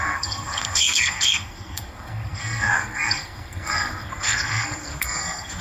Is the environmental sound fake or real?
fake